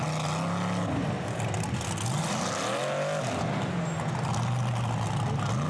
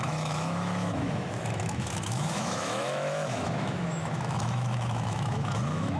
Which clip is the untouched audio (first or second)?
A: first